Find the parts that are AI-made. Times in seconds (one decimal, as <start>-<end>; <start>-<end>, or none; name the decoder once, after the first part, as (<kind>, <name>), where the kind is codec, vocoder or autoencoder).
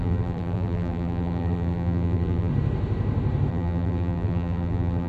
0.0-2.5 (vocoder, BigVGAN v2); 3.5-5.1